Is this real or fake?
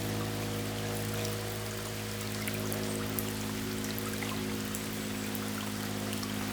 real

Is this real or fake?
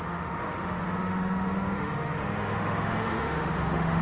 fake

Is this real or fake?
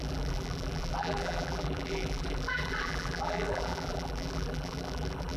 fake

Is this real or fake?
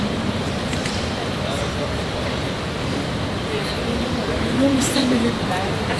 fake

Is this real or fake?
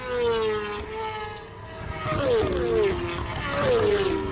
real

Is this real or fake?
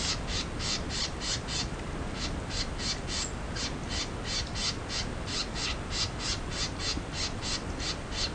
real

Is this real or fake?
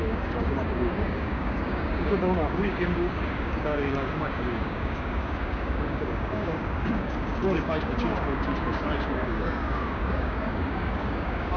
fake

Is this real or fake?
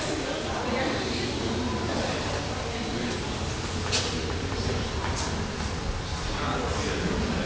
real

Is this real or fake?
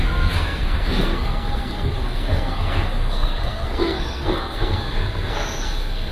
fake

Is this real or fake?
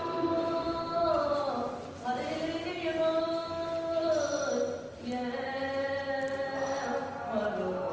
real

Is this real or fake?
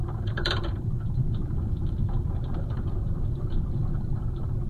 fake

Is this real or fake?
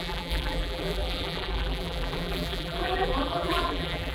fake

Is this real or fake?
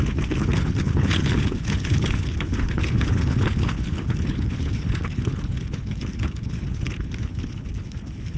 fake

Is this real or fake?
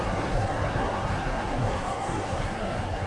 fake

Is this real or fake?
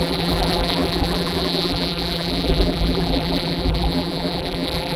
fake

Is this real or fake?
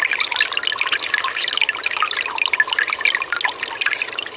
real